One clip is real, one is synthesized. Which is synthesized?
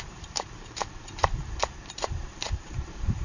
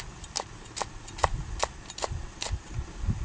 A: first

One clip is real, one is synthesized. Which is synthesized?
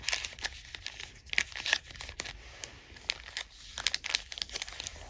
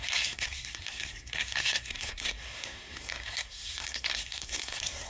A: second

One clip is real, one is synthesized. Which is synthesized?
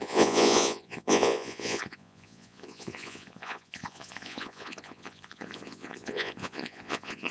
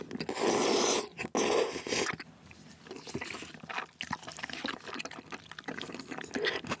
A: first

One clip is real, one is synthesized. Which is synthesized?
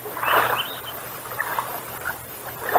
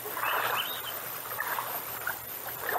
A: second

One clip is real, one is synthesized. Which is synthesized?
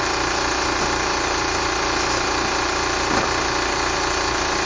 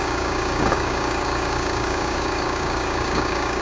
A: second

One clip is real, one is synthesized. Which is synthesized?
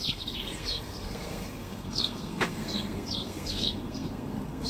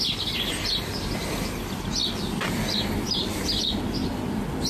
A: first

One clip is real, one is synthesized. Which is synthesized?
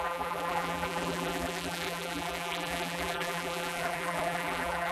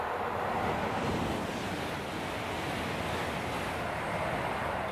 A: first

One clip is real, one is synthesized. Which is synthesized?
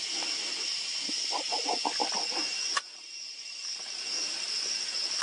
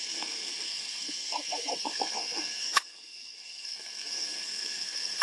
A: second